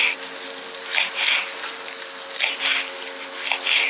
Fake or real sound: real